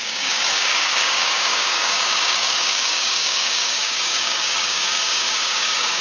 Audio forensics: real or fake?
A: fake